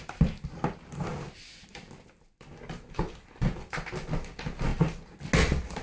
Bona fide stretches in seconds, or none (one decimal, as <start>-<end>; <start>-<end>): 0.0-5.8